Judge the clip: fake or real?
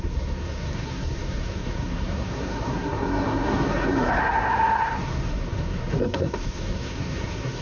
fake